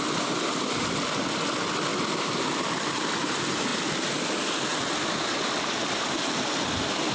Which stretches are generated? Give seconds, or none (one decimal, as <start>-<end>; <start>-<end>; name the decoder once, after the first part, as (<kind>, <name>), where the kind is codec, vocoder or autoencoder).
none